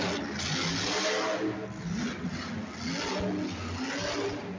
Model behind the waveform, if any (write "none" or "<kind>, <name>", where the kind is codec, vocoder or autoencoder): none